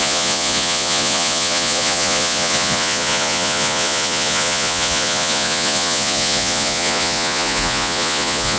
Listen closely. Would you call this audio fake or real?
fake